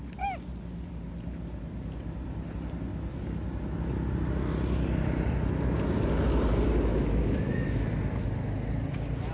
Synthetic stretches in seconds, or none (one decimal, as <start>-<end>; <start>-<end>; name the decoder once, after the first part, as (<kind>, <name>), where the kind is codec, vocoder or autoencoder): 6.9-7.9 (autoencoder, DAC-VAE)